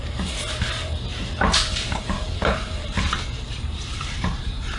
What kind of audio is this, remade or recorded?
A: remade